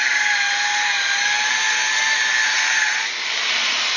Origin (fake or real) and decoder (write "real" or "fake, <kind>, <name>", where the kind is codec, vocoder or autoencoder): real